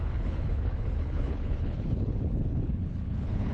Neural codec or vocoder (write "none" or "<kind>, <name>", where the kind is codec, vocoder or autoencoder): codec, HILCodec